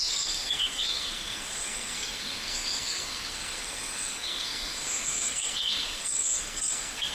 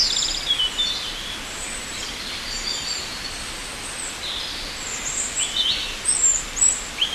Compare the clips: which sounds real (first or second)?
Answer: second